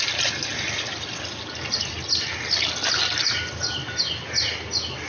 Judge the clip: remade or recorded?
recorded